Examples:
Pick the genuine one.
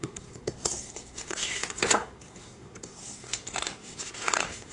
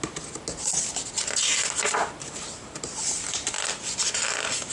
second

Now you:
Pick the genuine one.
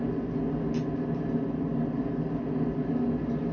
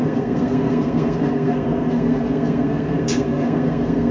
first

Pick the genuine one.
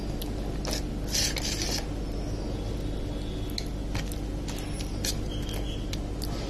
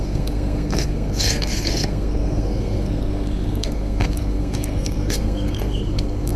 first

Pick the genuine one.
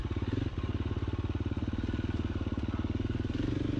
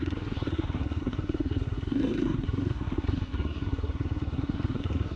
first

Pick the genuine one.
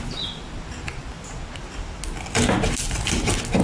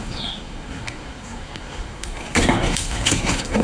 first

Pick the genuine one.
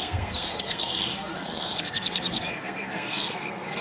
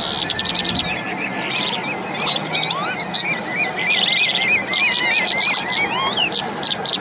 second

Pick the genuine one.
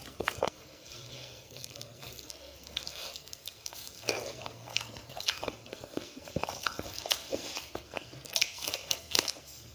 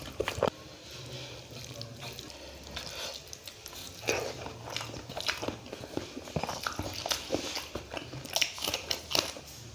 second